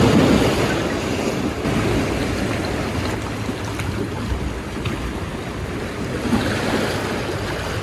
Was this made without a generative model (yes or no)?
yes